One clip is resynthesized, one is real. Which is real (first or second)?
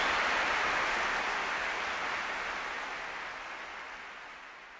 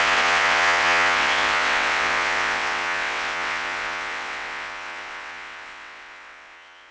first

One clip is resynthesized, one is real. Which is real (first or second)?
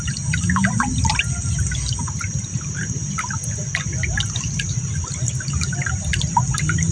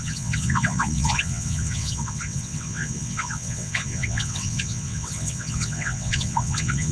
first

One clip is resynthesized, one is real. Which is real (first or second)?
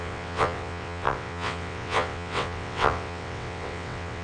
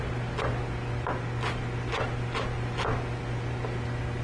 second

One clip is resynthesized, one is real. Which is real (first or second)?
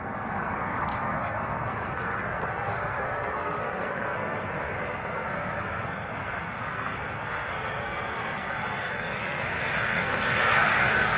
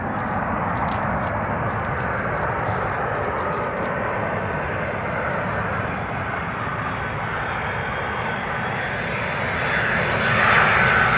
second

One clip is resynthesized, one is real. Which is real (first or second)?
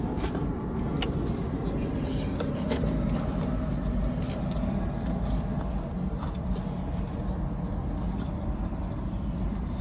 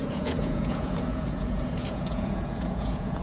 first